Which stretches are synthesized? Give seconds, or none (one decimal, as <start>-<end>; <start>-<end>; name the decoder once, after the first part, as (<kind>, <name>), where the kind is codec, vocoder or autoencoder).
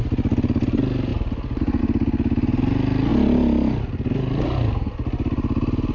none